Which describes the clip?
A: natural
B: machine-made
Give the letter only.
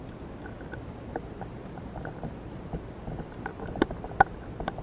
A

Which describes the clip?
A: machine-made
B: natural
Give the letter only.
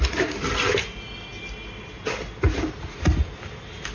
B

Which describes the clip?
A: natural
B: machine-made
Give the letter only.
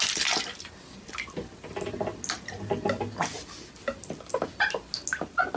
A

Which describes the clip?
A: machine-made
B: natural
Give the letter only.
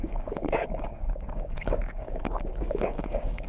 A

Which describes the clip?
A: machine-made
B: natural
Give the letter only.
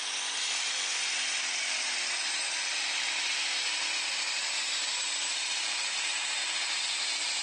B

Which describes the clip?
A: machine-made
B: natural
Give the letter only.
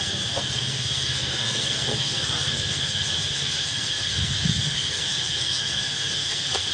A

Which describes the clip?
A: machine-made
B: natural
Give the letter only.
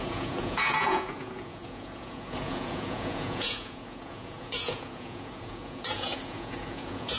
A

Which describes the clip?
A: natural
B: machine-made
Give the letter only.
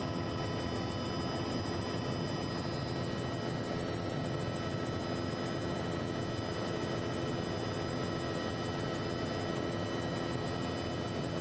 A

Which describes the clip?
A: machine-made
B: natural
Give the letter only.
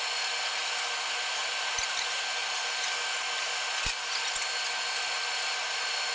B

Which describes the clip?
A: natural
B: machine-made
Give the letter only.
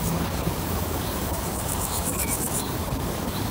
B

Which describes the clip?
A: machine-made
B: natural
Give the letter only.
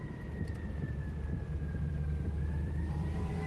A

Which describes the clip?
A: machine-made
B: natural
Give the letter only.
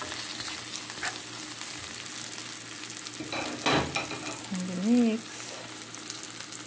B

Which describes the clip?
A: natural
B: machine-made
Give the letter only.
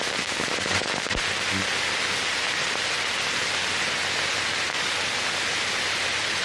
A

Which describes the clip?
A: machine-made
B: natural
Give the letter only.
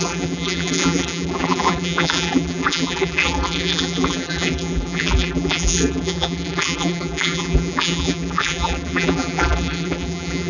A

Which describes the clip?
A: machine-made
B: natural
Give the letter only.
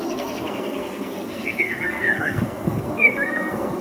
A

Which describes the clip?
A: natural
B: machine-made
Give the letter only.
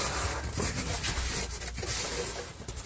A